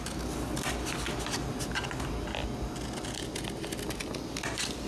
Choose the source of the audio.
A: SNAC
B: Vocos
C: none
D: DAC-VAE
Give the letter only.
C